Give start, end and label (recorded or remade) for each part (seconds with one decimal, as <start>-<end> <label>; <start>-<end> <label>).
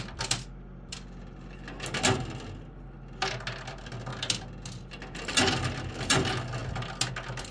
0.0-7.5 recorded